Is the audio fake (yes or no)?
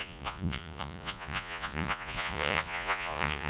yes